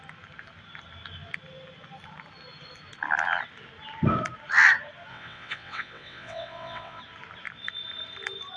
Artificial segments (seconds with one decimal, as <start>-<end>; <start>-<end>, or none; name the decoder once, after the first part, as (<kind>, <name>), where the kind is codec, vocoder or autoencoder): 5.1-7.0 (vocoder, WaveNeXt)